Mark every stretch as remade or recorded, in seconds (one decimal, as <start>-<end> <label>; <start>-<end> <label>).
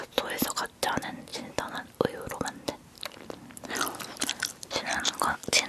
0.0-1.3 recorded; 1.3-4.7 remade; 4.7-5.7 recorded